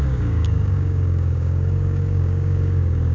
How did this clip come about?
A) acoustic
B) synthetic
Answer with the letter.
B